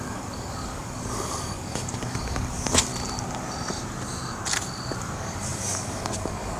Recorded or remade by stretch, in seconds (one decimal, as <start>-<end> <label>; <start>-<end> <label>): 0.0-2.9 remade; 2.9-5.0 recorded; 5.0-6.6 remade